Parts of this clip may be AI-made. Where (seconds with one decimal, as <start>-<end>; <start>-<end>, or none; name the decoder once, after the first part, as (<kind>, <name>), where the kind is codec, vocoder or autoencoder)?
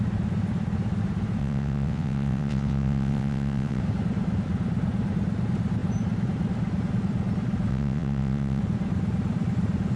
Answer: 1.4-3.8 (vocoder, WaveNeXt); 7.7-8.6